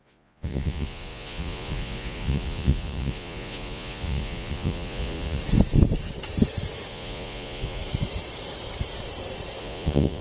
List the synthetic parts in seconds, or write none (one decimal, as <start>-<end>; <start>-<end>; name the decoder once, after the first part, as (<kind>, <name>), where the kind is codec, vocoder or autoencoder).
0.0-5.4 (vocoder, Vocos); 6.9-7.8; 9.6-10.2